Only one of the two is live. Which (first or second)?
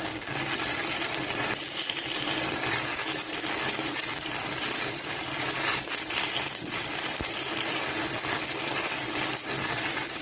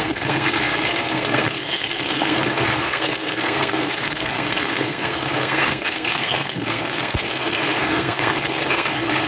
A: first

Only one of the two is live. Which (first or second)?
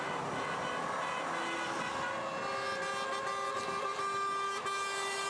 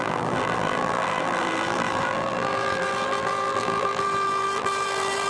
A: first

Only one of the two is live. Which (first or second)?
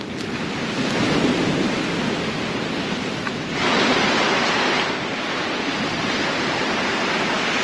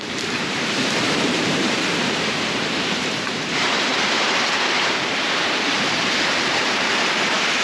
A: first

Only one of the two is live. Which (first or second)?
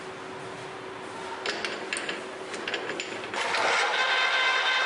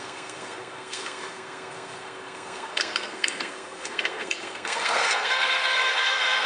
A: first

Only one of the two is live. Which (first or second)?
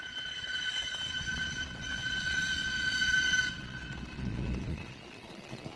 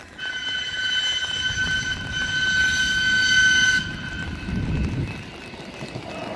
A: second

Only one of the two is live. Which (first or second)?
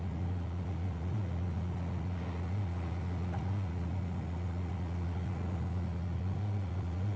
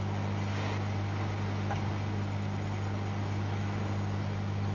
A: second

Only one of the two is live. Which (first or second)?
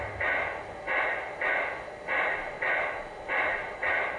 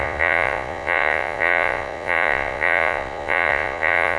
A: first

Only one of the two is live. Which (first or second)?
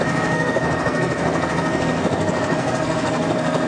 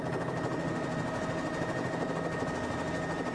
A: second